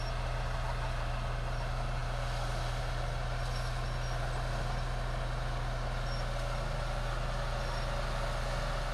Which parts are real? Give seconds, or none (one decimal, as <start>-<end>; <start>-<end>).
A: 0.0-8.9

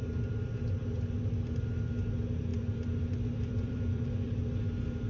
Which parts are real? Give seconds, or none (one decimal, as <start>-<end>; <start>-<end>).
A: 0.0-2.5; 4.4-5.1

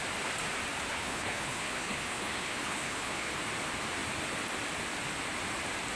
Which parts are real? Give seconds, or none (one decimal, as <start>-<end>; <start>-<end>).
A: 0.0-0.9; 3.3-6.0

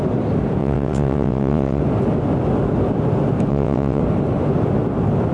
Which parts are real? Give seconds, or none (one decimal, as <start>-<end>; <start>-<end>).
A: 0.0-0.6; 1.8-3.5; 4.0-5.3

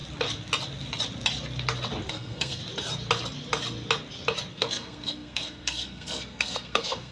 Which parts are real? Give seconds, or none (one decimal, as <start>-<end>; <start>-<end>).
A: 0.0-2.1; 2.6-4.5

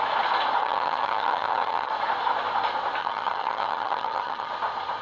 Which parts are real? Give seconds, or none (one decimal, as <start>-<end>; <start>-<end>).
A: 0.0-0.6; 1.9-3.0; 4.5-5.0

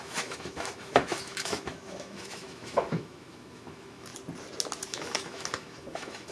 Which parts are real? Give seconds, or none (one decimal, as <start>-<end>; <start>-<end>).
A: 4.1-4.9

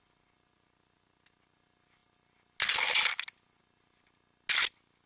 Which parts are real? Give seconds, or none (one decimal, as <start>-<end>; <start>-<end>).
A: 0.0-5.1